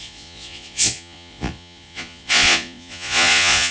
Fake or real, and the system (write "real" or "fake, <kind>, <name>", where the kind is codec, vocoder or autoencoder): fake, vocoder, Vocos